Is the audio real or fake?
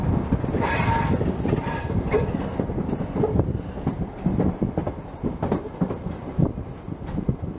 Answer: real